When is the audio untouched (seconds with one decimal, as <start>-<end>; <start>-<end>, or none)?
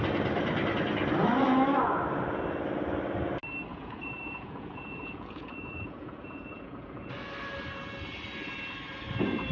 0.0-3.7; 7.1-9.5